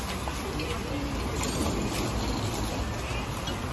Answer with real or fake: real